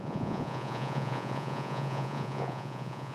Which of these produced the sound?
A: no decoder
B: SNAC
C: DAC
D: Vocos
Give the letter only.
D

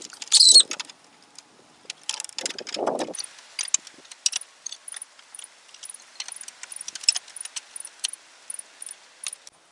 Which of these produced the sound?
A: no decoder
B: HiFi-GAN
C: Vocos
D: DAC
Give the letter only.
A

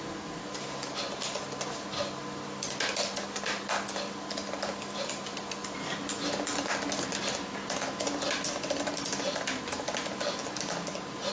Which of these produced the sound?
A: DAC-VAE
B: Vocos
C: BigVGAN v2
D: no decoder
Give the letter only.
D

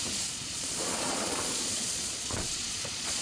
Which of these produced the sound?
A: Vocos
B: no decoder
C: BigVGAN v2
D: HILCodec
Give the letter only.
A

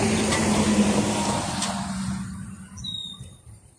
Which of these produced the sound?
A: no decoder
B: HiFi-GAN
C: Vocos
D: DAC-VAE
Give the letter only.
A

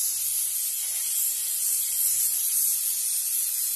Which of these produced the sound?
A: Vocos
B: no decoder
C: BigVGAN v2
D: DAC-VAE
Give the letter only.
B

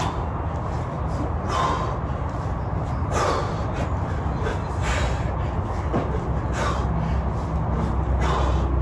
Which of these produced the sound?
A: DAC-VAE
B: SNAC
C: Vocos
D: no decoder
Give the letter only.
D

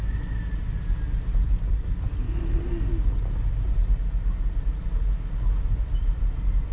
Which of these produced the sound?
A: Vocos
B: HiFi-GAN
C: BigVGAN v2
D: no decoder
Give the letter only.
D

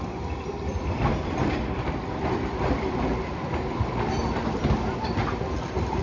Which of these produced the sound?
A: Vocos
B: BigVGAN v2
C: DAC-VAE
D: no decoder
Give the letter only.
D